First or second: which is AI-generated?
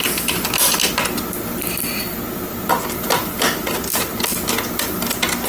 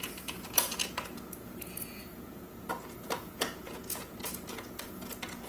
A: second